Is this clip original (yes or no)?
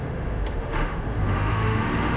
no